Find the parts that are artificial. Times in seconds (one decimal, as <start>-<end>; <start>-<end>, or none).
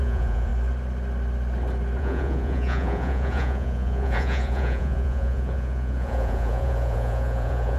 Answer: 0.0-0.5; 2.0-7.8